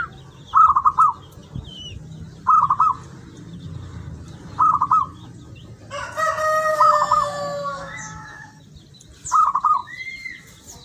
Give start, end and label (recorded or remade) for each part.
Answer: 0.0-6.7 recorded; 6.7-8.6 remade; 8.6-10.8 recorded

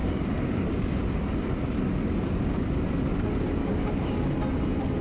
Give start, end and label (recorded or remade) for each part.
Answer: 0.0-0.9 remade; 0.9-3.6 recorded; 3.6-4.2 remade; 4.2-5.0 recorded